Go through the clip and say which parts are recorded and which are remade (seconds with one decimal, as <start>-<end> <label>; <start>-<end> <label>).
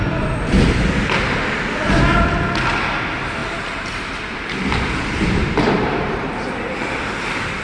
0.0-3.4 recorded; 3.4-4.2 remade; 4.2-5.4 recorded; 5.4-6.4 remade; 6.4-7.6 recorded